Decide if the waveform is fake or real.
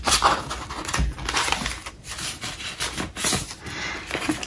real